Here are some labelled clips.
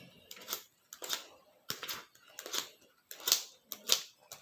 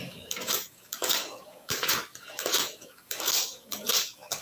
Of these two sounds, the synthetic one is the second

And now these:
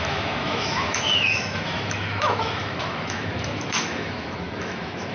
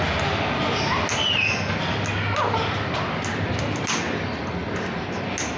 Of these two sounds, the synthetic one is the first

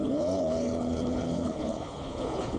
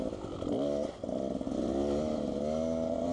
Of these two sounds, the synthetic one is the first